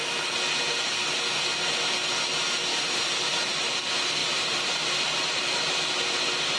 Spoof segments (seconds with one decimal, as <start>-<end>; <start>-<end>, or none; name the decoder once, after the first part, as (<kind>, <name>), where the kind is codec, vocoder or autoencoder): 2.7-3.7 (vocoder, BigVGAN v2); 4.2-5.7